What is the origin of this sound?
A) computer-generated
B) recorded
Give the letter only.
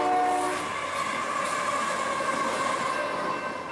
B